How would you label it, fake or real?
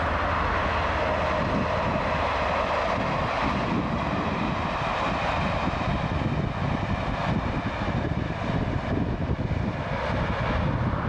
real